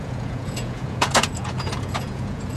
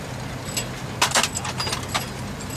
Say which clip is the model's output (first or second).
first